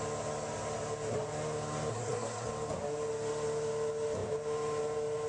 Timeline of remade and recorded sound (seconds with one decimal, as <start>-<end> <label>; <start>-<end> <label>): 0.0-1.9 recorded; 1.9-2.5 remade; 2.5-5.3 recorded